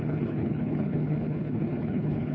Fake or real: fake